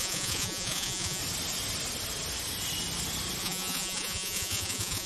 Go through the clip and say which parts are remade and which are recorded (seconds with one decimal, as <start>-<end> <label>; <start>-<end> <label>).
0.0-1.2 remade; 1.2-3.4 recorded; 3.4-5.1 remade